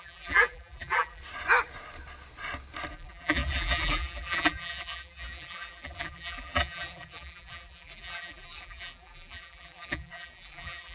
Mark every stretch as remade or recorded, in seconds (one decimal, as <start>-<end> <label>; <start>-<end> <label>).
0.0-1.2 remade; 1.2-2.9 recorded; 2.9-10.9 remade